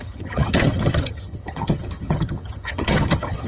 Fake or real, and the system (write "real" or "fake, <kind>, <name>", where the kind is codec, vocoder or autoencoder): fake, vocoder, HiFi-GAN